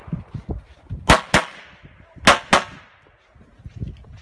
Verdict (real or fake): real